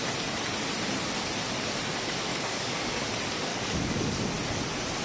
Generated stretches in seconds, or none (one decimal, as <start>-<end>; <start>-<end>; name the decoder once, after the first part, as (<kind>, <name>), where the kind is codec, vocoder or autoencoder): 2.3-3.0 (codec, DAC); 3.5-4.3